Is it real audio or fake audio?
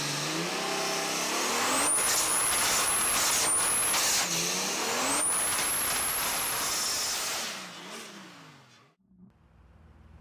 real